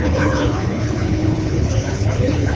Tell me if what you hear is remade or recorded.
remade